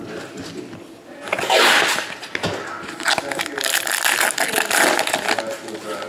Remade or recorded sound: recorded